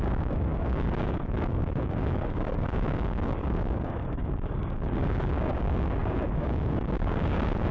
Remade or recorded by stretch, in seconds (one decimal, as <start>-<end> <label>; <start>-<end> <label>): 0.0-7.7 remade